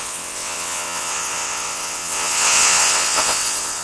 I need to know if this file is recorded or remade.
remade